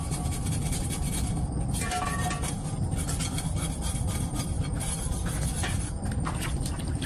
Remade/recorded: recorded